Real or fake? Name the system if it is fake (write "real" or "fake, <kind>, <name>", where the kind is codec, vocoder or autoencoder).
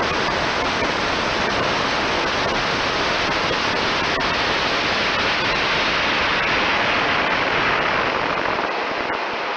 real